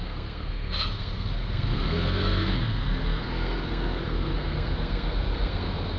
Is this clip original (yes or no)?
no